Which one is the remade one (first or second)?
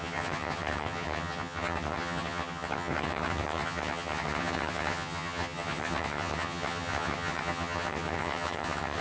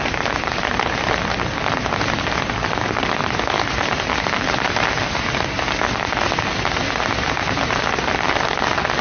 first